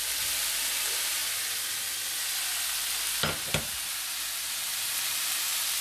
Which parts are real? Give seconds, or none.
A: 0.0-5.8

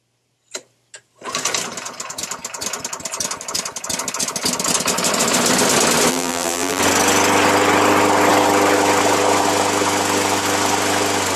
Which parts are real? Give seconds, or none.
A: 0.0-6.1; 6.8-11.4

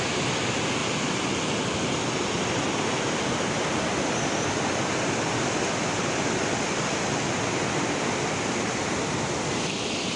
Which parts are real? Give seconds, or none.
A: 0.0-10.2

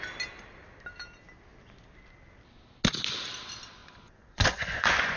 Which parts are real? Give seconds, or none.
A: 0.0-3.8

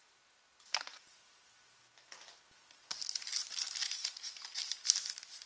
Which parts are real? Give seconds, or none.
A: 0.0-5.5

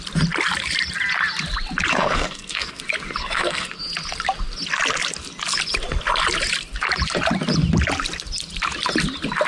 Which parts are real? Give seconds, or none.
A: 0.0-1.9; 2.8-3.2; 3.8-9.5